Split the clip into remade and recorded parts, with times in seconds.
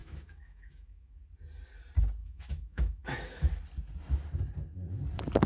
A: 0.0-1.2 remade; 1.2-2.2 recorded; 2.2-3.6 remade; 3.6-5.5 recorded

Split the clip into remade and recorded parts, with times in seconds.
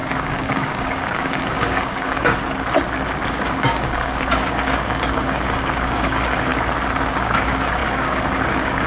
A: 0.0-2.4 remade; 2.4-3.3 recorded; 3.3-6.5 remade; 6.5-7.1 recorded; 7.1-8.9 remade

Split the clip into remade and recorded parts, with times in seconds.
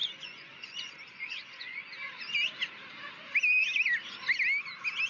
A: 0.0-1.8 remade; 1.8-5.1 recorded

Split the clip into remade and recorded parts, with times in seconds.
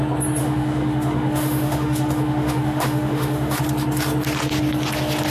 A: 0.0-0.4 recorded; 0.4-3.6 remade; 3.6-5.3 recorded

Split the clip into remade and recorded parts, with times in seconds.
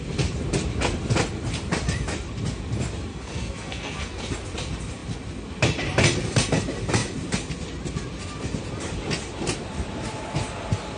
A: 0.0-3.1 recorded; 3.1-4.2 remade; 4.2-11.0 recorded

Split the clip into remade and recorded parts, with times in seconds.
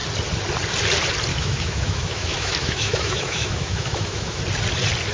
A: 0.0-1.3 recorded; 1.3-4.4 remade; 4.4-5.1 recorded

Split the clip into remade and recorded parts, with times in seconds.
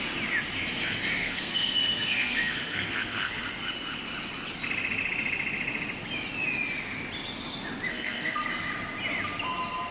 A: 0.0-1.2 recorded; 1.2-3.5 remade; 3.5-7.9 recorded; 7.9-8.5 remade; 8.5-9.9 recorded